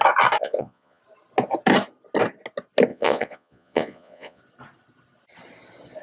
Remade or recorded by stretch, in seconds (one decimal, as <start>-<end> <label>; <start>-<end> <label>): 0.0-0.4 recorded; 0.4-1.0 remade; 1.0-2.9 recorded; 2.9-4.4 remade; 4.4-6.0 recorded